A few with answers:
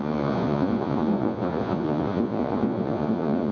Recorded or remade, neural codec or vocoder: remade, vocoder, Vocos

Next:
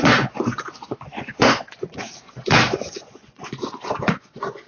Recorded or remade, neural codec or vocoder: remade, vocoder, Vocos